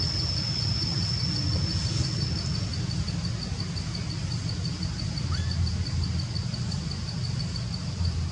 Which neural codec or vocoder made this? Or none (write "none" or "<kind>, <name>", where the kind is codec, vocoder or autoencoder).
none